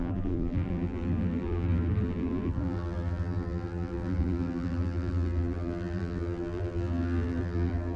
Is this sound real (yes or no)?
no